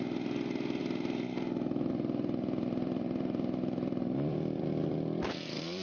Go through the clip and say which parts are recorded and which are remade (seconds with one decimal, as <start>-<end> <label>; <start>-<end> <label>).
0.0-0.8 remade; 0.8-1.9 recorded; 1.9-5.8 remade